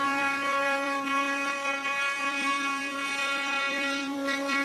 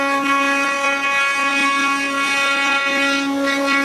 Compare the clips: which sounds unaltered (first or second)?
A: second